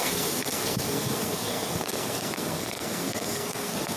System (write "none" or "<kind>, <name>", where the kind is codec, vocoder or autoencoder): codec, SNAC